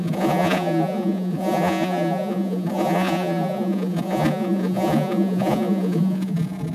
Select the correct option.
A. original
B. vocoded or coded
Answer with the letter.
B